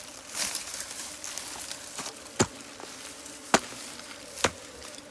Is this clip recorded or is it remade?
recorded